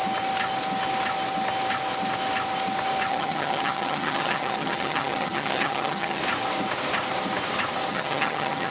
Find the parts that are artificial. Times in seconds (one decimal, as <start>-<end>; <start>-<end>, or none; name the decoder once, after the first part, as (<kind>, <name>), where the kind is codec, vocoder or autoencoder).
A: 3.1-6.2 (vocoder, HiFi-GAN); 7.9-8.7